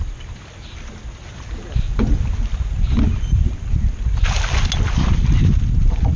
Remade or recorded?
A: recorded